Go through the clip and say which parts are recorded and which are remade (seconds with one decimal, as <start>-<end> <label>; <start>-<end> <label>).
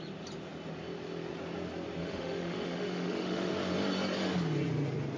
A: 0.0-2.0 recorded; 2.0-3.5 remade; 3.5-5.2 recorded